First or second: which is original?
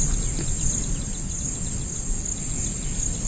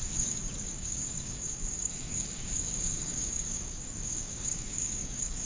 first